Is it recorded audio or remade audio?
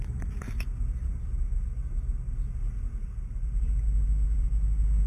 recorded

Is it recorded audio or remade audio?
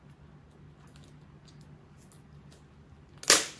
recorded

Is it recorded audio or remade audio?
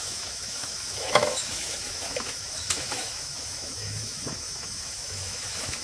remade